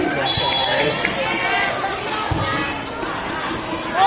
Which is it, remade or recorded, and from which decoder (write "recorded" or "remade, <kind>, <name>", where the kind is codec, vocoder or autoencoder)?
recorded